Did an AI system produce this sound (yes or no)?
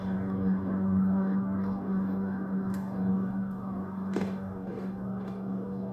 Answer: yes